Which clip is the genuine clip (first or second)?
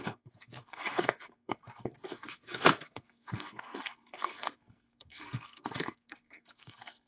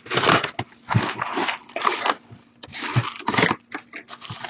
second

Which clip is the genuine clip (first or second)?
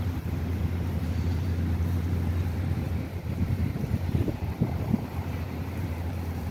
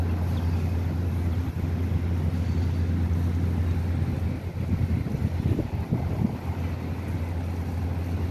second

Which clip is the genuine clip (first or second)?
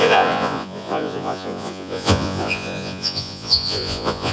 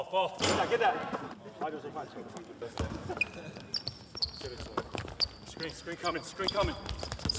second